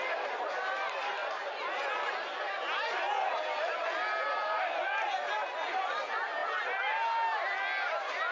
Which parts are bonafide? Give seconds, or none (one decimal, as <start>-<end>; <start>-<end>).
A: 0.0-8.3